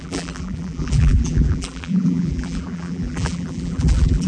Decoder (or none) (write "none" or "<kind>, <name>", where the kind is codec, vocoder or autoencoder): vocoder, BigVGAN v2